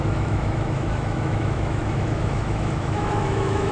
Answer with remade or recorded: remade